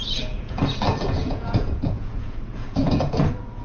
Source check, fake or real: fake